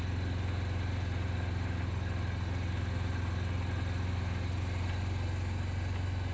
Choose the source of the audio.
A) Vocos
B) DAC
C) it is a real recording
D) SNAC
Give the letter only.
C